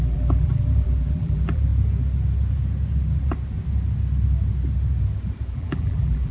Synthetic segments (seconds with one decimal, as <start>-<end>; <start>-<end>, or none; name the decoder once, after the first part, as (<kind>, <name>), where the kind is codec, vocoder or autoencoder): 0.0-1.7 (vocoder, BigVGAN v2); 5.5-6.3